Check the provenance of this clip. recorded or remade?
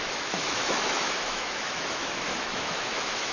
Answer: remade